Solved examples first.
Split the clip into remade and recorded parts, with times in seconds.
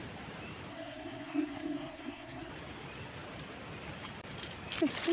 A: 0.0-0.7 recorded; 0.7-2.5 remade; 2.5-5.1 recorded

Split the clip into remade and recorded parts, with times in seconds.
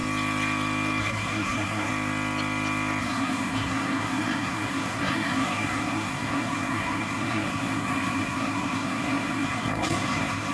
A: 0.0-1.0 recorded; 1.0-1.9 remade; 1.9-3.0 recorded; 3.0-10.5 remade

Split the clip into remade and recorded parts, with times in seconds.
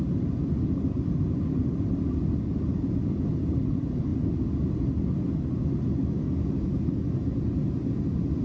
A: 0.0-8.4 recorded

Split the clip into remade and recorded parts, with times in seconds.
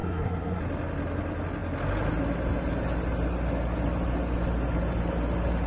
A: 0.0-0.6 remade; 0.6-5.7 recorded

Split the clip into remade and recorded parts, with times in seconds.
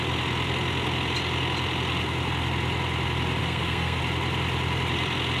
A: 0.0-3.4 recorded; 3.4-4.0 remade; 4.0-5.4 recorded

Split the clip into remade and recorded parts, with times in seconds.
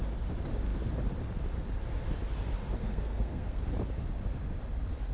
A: 0.0-2.8 recorded; 2.8-3.6 remade; 3.6-5.1 recorded